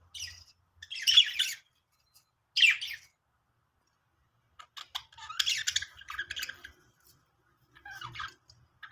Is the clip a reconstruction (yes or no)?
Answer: no